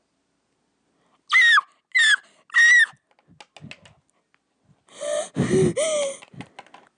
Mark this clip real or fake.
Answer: real